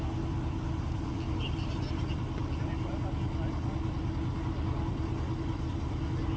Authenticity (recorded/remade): recorded